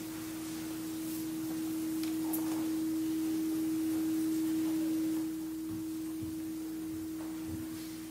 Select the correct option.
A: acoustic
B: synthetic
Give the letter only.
A